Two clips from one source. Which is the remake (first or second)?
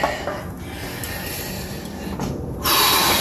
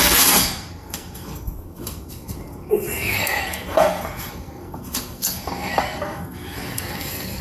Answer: second